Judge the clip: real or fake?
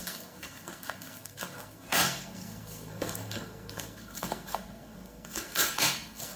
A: fake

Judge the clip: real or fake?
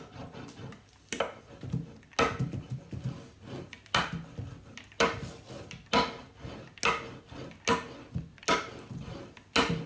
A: real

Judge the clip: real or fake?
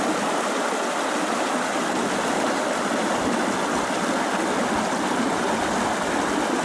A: real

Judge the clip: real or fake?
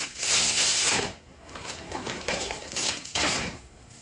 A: fake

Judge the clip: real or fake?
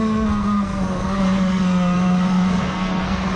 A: fake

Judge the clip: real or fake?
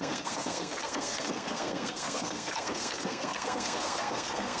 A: fake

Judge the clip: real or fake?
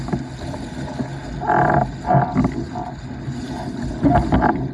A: real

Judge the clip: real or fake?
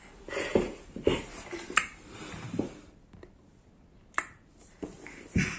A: real